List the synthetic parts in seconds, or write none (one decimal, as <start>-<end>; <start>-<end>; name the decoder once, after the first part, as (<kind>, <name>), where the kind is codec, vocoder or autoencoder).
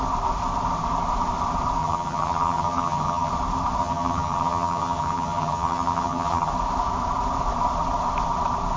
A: 1.8-3.3 (vocoder, HiFi-GAN); 3.8-6.5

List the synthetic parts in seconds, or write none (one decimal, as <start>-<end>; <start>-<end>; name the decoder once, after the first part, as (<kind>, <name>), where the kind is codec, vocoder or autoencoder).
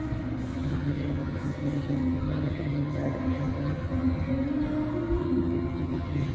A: 0.5-4.3 (vocoder, HiFi-GAN); 5.2-6.3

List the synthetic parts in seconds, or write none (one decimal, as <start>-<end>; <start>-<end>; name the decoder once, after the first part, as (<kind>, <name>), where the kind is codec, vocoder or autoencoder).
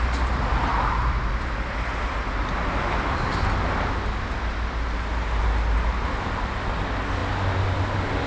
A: none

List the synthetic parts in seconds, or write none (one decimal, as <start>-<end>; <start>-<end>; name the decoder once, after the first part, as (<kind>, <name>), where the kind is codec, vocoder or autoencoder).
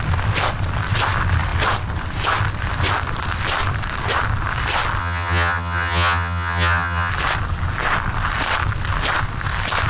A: 5.0-7.1 (vocoder, HiFi-GAN)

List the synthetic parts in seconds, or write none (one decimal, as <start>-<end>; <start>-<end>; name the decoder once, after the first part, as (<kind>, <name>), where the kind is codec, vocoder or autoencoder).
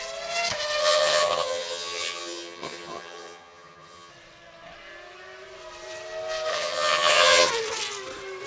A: 0.8-4.1 (vocoder, HiFi-GAN); 6.5-7.5